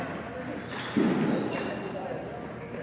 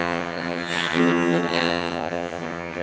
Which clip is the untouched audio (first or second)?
first